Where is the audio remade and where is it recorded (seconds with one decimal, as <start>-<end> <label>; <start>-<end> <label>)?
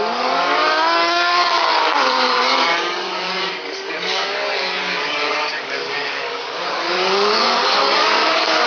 0.0-8.7 remade